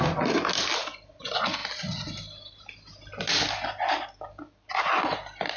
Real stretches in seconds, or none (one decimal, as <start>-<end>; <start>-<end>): 0.0-5.6